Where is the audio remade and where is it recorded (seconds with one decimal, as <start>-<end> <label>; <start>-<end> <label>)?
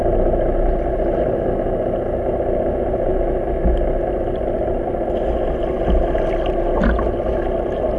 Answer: 0.0-8.0 recorded